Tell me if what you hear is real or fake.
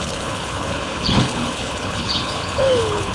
fake